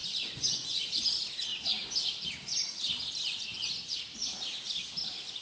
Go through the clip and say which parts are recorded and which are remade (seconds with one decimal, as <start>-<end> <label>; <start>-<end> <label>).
0.0-1.1 remade; 1.1-3.5 recorded; 3.5-4.0 remade; 4.0-5.4 recorded